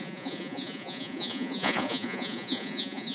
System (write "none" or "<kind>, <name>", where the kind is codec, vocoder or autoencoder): vocoder, Vocos